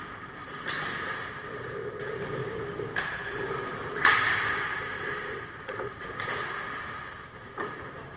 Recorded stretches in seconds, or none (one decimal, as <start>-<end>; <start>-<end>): 0.4-1.4